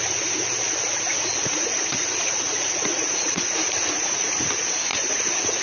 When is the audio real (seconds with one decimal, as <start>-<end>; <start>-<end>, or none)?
0.0-1.1; 4.5-4.9